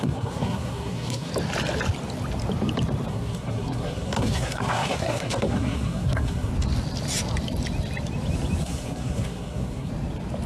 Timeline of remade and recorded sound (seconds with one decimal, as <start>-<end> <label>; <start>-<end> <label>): 0.0-1.3 remade; 1.3-3.1 recorded; 3.1-6.5 remade; 6.5-8.6 recorded; 8.6-9.9 remade; 9.9-10.5 recorded